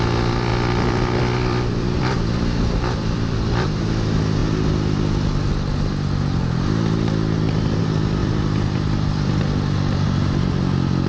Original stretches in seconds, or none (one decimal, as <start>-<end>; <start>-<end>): 0.0-0.5; 3.8-8.2; 9.4-11.1